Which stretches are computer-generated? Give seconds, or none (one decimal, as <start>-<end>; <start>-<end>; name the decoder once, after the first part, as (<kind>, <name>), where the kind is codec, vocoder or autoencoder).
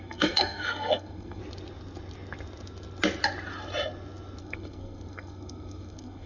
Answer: 0.0-1.4 (codec, SNAC); 4.4-6.3